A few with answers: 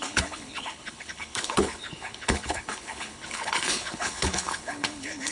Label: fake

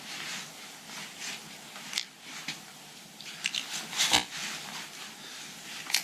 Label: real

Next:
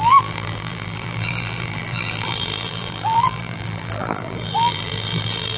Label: fake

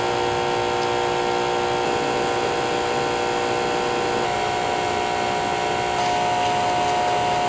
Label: real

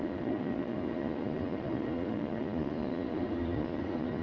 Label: fake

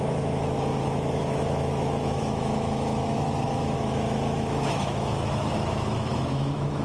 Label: fake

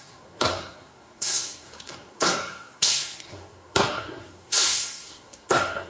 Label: fake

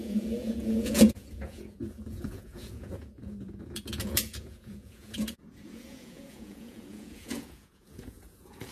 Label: fake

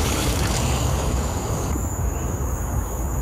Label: fake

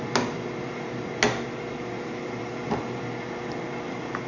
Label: real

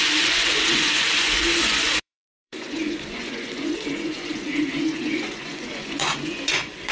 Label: fake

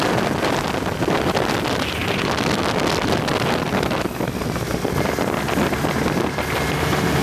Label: real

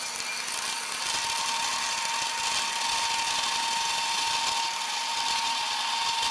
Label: real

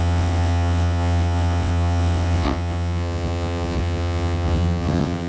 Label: fake